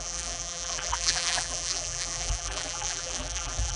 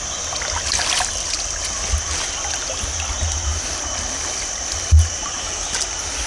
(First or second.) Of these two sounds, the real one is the second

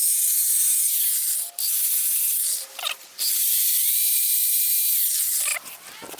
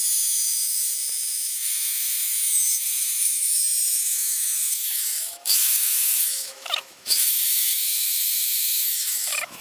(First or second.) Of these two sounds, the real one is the first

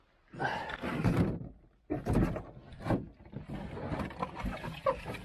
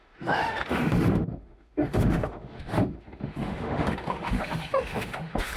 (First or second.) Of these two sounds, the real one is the first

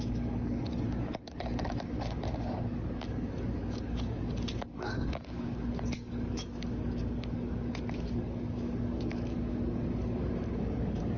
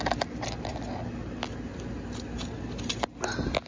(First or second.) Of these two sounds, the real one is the second